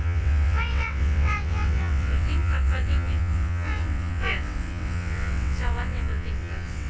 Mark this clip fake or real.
fake